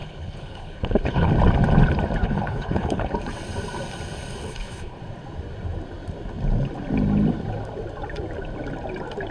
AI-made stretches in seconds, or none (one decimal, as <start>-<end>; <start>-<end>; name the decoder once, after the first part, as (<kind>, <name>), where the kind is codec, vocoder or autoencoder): 0.0-1.3 (codec, HILCodec); 2.2-3.1; 4.4-5.0